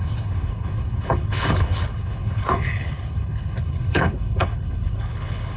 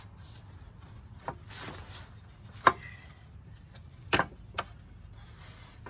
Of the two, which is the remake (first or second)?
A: first